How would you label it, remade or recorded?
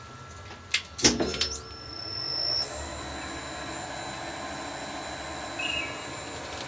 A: recorded